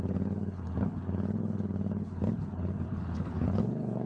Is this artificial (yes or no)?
yes